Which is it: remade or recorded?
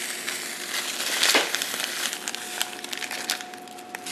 recorded